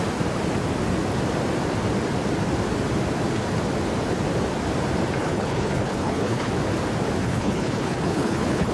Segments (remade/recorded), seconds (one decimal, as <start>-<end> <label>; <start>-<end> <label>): 0.0-5.2 recorded; 5.2-6.5 remade; 6.5-7.2 recorded; 7.2-8.7 remade